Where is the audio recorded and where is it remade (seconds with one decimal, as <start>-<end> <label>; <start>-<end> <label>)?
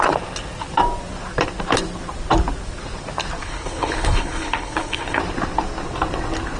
0.0-3.4 recorded; 3.4-5.2 remade; 5.2-6.6 recorded